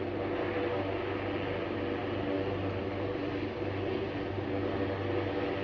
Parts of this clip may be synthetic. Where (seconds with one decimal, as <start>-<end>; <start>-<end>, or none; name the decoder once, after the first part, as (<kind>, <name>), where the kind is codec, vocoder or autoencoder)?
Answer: none